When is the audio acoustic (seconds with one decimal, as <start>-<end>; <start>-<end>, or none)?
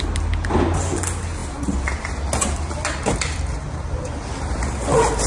0.0-5.3